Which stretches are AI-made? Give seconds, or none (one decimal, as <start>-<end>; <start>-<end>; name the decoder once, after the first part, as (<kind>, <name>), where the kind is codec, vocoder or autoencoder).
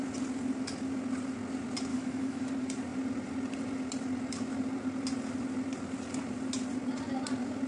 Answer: 1.9-2.5 (autoencoder, DAC-VAE)